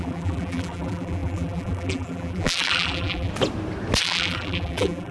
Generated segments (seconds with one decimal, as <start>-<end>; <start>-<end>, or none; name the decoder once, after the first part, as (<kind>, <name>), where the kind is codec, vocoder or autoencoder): 0.0-3.3 (vocoder, BigVGAN v2); 4.0-5.1